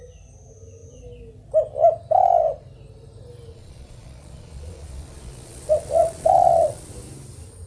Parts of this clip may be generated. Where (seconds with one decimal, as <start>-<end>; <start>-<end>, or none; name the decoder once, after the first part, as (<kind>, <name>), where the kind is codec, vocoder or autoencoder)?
3.5-6.9 (vocoder, Vocos)